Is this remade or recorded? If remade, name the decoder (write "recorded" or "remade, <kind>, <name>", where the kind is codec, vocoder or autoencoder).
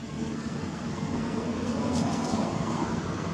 remade, codec, SNAC